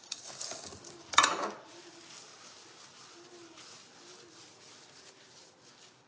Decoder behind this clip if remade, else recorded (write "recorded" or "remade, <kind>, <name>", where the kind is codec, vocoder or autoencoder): recorded